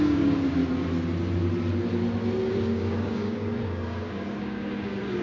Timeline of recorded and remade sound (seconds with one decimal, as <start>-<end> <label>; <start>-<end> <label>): 0.0-0.6 remade; 0.6-2.5 recorded; 2.5-5.2 remade